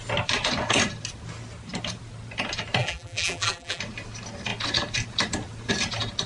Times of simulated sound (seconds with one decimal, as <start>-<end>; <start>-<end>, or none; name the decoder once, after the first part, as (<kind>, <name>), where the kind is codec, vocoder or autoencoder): 2.8-3.8 (vocoder, BigVGAN v2)